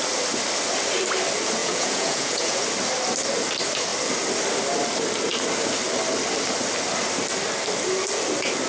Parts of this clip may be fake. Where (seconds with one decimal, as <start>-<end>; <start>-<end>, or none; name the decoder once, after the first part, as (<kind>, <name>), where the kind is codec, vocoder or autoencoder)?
1.6-2.6 (vocoder, Vocos)